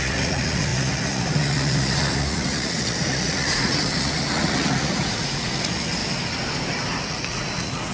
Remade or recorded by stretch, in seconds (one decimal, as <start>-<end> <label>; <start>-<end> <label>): 0.0-6.0 remade; 6.0-7.0 recorded; 7.0-7.9 remade